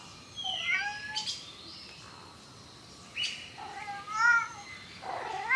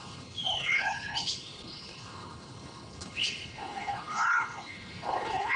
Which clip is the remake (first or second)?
second